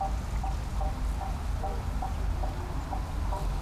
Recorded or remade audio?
recorded